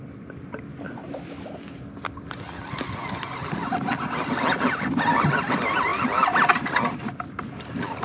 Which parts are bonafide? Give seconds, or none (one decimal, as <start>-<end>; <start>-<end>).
0.0-8.0